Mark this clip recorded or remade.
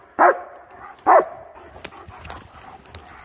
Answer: recorded